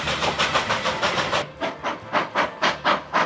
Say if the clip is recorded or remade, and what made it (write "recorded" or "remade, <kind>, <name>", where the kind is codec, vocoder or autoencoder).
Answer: recorded